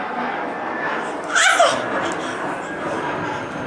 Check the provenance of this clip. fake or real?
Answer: real